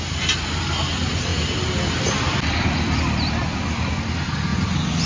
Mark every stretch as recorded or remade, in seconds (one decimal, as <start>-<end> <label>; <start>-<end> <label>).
0.0-5.1 recorded